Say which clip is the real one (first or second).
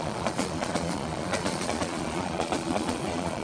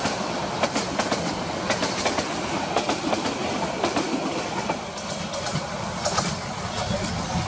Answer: second